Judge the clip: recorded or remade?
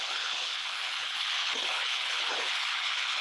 remade